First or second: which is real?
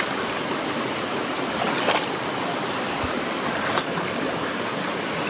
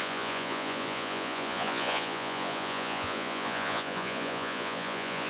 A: first